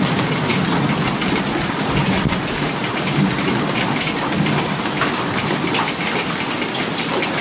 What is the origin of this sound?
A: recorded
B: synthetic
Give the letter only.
A